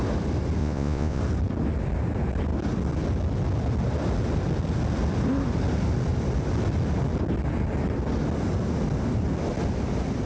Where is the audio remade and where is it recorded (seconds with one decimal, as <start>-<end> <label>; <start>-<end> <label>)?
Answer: 0.0-0.6 recorded; 0.6-1.2 remade; 1.2-10.3 recorded

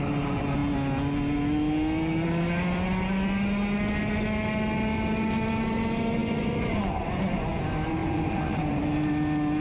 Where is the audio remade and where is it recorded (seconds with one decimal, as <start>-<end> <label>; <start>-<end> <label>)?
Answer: 0.0-6.2 recorded; 6.2-7.6 remade; 7.6-8.0 recorded; 8.0-8.8 remade; 8.8-9.6 recorded